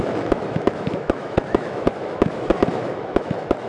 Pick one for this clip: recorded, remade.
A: remade